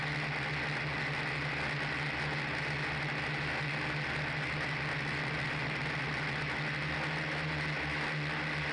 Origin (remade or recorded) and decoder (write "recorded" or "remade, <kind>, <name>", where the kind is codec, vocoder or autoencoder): recorded